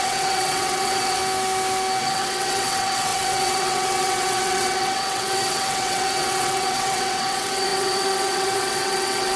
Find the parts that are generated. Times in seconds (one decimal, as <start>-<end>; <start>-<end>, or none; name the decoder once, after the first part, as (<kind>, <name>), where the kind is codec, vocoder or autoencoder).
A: 0.0-1.2 (vocoder, WaveNeXt); 2.0-9.4